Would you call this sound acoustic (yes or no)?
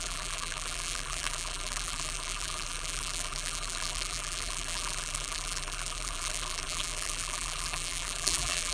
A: no